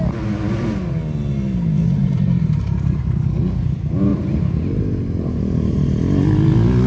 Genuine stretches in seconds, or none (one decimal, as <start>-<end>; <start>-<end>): 0.0-2.0; 3.0-4.1; 5.4-6.9